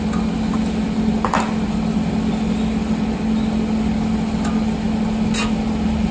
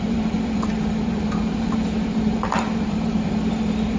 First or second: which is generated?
second